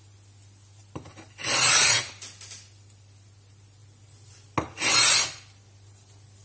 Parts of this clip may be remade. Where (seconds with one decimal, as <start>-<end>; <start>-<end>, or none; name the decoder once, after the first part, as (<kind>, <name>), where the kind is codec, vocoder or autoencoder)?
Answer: none